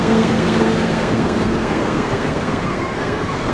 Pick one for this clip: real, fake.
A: fake